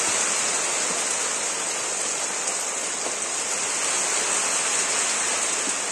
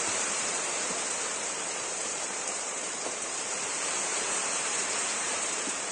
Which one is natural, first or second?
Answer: first